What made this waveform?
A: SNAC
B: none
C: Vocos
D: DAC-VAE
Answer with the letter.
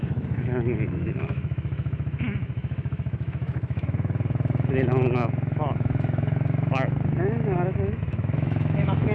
D